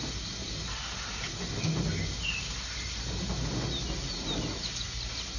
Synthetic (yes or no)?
no